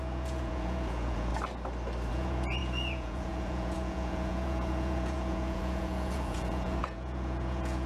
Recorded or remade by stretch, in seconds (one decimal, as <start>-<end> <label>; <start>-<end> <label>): 0.0-1.3 remade; 1.3-2.1 recorded; 2.1-7.9 remade